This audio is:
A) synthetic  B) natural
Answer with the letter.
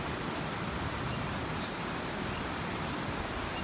B